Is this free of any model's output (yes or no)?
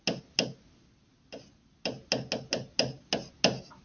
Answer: yes